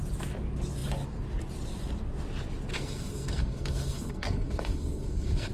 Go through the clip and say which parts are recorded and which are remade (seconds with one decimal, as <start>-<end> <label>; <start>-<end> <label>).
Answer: 0.0-2.7 recorded; 2.7-5.5 remade